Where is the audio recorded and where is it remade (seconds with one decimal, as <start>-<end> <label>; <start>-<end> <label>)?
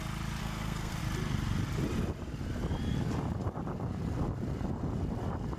0.0-0.4 recorded; 0.4-1.0 remade; 1.0-5.6 recorded